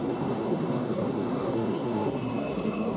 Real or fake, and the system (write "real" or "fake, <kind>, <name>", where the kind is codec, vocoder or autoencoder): fake, codec, SNAC